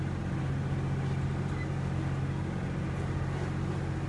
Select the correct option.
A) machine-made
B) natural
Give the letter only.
B